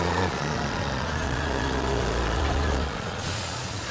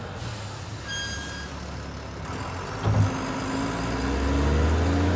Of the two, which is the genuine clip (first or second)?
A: second